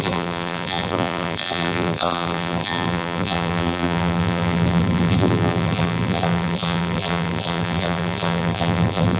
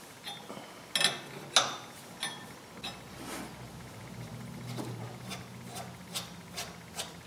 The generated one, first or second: first